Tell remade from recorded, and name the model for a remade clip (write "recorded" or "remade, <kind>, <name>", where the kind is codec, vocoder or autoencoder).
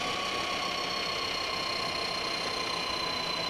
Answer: recorded